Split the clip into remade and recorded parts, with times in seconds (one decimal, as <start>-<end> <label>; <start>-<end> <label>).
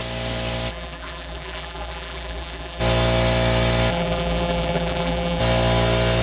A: 0.0-0.7 recorded; 0.7-2.8 remade; 2.8-3.9 recorded; 3.9-5.4 remade; 5.4-6.2 recorded